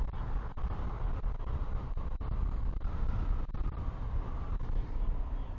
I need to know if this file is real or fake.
real